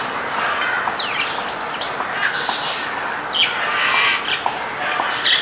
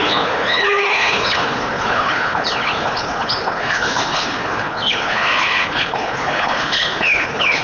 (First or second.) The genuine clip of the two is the first